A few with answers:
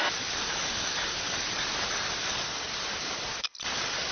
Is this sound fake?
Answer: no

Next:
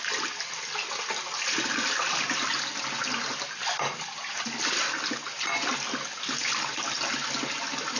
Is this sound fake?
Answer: no